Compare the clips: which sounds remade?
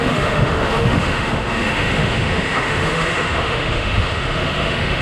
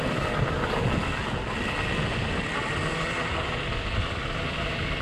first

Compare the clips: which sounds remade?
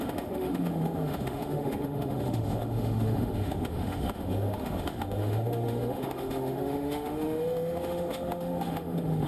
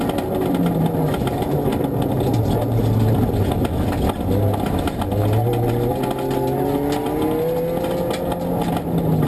first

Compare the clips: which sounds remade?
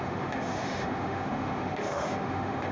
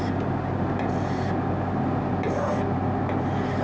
first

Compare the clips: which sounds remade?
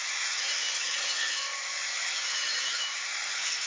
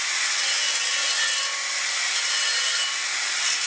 first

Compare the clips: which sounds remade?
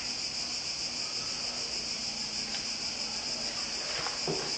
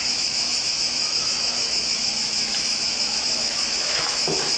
second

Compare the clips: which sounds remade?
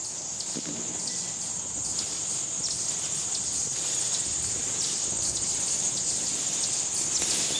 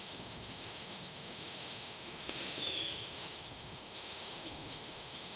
second